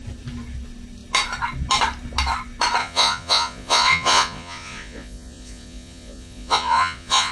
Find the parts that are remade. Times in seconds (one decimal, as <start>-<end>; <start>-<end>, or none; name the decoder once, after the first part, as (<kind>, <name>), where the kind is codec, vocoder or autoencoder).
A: 2.8-7.3 (vocoder, Vocos)